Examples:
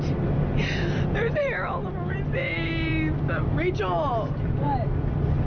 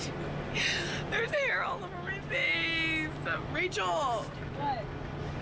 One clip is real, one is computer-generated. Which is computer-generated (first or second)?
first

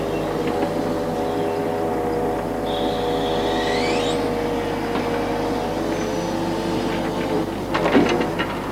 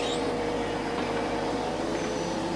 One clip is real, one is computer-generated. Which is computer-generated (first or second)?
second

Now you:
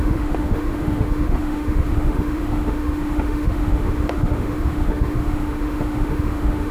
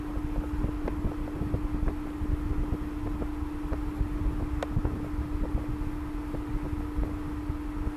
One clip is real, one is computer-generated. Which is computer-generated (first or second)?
first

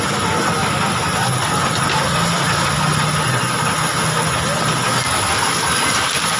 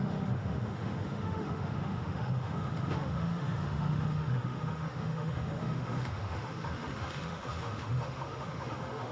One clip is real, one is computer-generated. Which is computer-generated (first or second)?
second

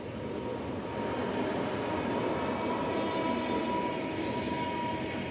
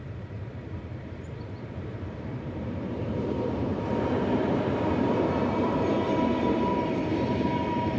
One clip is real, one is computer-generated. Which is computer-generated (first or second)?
second